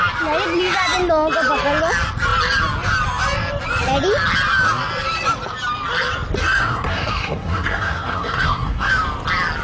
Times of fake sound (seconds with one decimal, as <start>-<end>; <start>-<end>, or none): 6.4-8.9